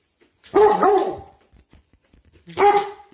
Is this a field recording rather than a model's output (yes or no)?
no